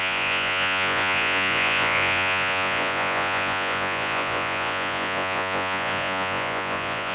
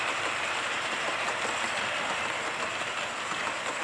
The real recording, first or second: second